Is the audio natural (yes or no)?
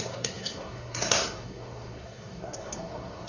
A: no